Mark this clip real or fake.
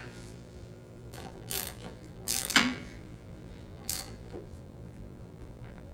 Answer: fake